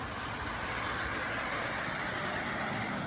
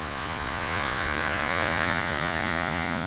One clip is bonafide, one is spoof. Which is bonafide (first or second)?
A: first